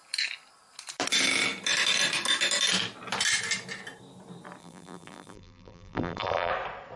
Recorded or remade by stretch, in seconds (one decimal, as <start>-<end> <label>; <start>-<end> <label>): 0.0-4.6 recorded; 4.6-6.5 remade; 6.5-7.0 recorded

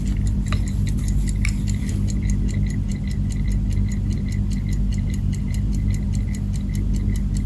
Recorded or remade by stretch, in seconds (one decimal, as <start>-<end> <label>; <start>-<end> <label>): 0.0-4.9 recorded; 4.9-5.7 remade; 5.7-7.5 recorded

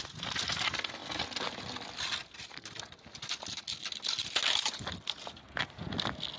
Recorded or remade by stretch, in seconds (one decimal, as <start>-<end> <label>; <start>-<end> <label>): 0.0-6.4 recorded

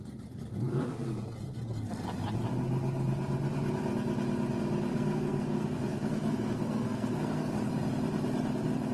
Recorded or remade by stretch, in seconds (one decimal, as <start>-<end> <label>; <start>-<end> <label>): 0.0-4.9 recorded; 4.9-7.6 remade; 7.6-8.9 recorded